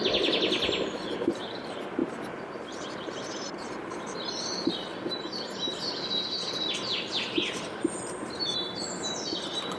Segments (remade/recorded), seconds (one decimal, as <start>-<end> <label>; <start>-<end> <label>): 0.0-2.0 recorded; 2.0-3.7 remade; 3.7-9.8 recorded